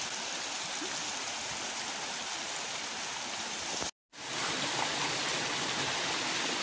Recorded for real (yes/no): yes